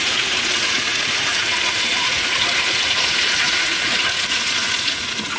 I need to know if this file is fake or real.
fake